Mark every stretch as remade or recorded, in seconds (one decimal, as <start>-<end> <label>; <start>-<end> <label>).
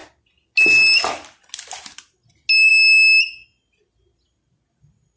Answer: 0.0-5.2 recorded